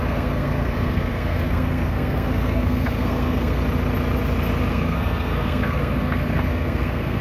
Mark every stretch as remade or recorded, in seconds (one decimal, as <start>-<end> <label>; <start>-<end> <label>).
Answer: 0.0-3.6 remade; 3.6-4.7 recorded; 4.7-7.2 remade